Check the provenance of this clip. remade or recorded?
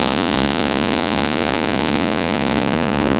remade